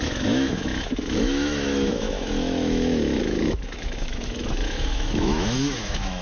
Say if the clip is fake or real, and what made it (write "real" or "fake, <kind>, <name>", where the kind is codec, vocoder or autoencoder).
fake, autoencoder, DAC-VAE